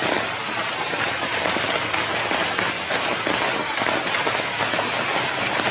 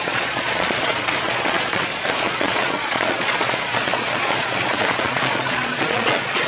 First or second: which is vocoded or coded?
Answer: second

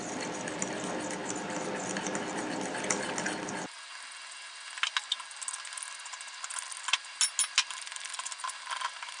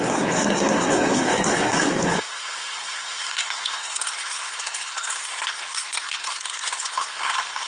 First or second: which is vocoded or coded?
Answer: second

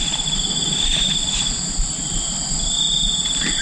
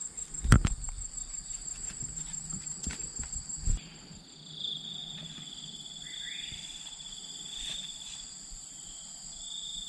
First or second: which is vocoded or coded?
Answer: first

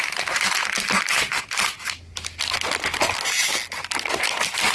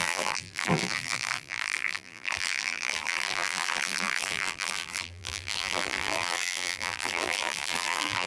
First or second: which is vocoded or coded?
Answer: second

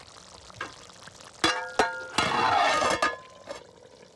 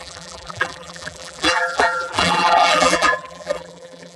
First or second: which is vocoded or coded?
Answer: second